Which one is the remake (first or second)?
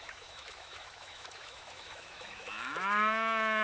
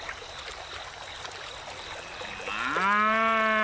first